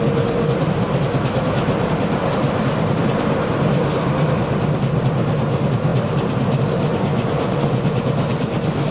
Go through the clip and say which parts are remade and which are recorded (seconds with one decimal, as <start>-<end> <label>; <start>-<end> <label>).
0.0-7.1 recorded; 7.1-8.0 remade; 8.0-8.9 recorded